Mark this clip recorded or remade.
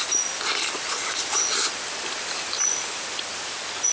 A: recorded